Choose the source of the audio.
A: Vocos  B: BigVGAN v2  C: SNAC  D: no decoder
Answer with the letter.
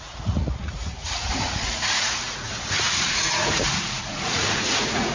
A